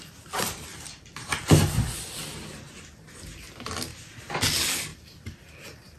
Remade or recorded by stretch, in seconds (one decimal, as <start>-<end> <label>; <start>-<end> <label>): 0.0-0.7 recorded; 0.7-2.5 remade; 2.5-3.9 recorded; 3.9-4.4 remade; 4.4-4.9 recorded; 4.9-5.6 remade; 5.6-6.0 recorded